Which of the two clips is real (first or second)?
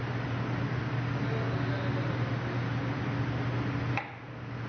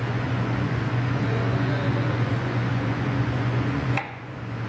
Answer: first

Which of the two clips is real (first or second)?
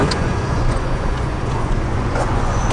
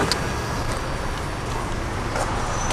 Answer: second